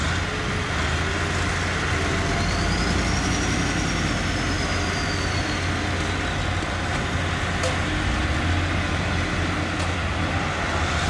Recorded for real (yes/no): yes